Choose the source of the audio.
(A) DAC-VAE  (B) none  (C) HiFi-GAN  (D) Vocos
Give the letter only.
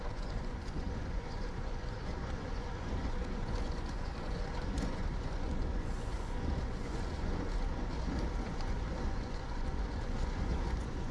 D